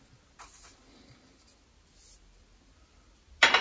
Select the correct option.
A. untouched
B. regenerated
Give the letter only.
A